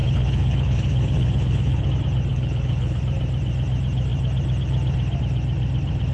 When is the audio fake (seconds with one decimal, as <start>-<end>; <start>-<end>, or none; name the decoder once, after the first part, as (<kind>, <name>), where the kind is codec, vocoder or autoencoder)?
0.0-1.9 (codec, HILCodec); 2.3-3.0

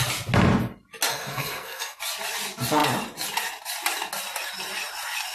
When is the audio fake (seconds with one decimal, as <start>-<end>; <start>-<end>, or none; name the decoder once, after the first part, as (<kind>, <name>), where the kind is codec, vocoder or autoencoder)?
1.1-2.0 (codec, SNAC)

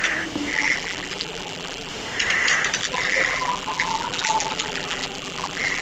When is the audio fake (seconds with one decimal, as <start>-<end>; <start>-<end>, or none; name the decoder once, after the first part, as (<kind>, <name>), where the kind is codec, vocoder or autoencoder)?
0.5-1.9 (vocoder, BigVGAN v2); 2.8-5.8

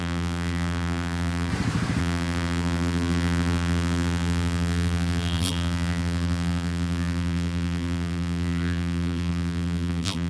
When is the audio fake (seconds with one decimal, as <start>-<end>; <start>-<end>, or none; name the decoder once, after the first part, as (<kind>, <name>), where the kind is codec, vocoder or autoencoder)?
0.0-1.5 (vocoder, BigVGAN v2); 2.0-10.3

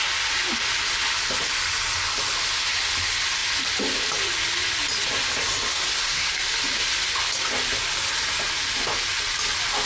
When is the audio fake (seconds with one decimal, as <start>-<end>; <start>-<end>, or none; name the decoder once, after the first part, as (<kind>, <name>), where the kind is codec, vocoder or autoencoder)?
5.7-6.3 (codec, SNAC)

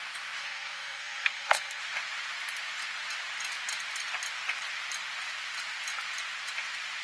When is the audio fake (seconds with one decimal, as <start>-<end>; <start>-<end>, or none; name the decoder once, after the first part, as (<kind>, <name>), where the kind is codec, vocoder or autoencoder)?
0.4-1.8 (codec, SNAC)

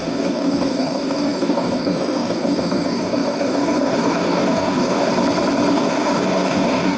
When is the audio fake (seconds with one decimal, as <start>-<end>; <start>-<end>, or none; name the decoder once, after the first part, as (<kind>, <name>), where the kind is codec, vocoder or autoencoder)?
0.0-5.1 (codec, DAC); 5.7-7.0